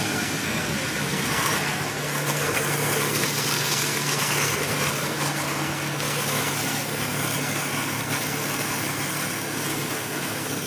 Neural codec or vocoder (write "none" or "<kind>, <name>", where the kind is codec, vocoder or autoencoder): codec, SNAC